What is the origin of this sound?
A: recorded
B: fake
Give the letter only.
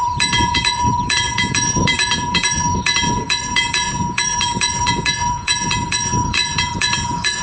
B